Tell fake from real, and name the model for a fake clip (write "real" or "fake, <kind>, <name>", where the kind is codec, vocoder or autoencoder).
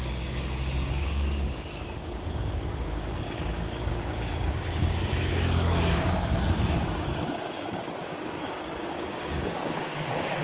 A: fake, codec, DAC